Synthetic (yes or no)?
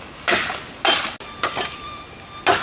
no